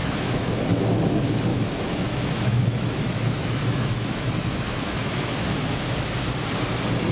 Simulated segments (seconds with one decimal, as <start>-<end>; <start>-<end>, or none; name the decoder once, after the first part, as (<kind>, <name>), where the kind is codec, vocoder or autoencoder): 0.0-0.8 (autoencoder, DAC-VAE); 1.5-5.8